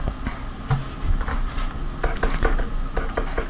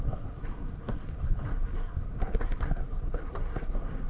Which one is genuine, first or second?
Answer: first